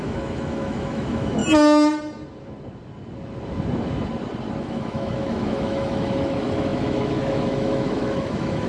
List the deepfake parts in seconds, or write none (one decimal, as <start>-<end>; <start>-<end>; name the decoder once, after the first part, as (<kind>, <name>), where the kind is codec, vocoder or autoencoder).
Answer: 0.0-1.4 (autoencoder, DAC-VAE); 4.6-8.7